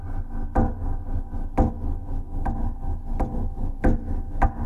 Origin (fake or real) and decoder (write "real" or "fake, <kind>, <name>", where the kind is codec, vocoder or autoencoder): real